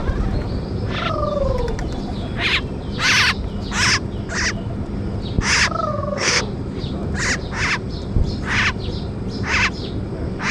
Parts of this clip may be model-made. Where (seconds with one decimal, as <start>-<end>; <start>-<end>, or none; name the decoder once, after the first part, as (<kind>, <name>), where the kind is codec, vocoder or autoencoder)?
5.9-6.4 (codec, SNAC)